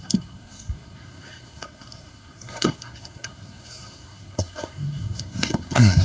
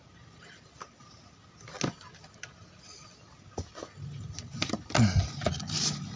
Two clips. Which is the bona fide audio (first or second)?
second